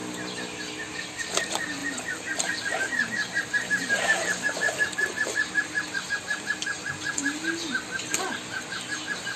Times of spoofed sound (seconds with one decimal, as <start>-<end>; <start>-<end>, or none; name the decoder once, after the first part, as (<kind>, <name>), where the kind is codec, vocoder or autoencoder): 1.8-6.1 (vocoder, BigVGAN v2)